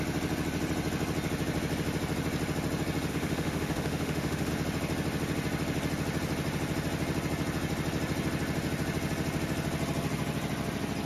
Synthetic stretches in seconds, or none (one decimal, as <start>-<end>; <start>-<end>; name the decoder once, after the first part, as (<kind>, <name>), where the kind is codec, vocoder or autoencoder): 3.1-4.5 (autoencoder, DAC-VAE)